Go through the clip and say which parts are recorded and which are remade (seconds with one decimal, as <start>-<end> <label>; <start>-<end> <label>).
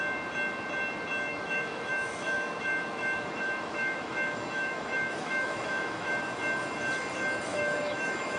0.0-1.3 recorded; 1.3-6.1 remade; 6.1-7.5 recorded; 7.5-8.4 remade